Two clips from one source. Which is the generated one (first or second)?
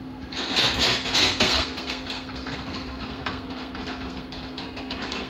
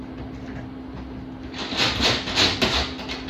first